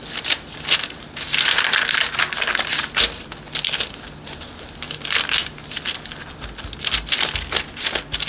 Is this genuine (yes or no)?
yes